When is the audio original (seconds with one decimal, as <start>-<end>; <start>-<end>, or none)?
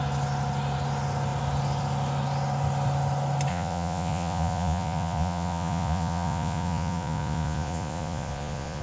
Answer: 0.0-3.5